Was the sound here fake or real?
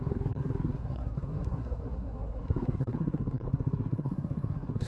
fake